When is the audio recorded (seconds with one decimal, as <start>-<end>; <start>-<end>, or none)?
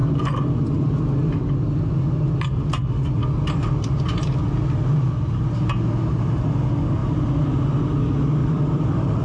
0.9-3.2; 5.4-7.0; 8.0-8.4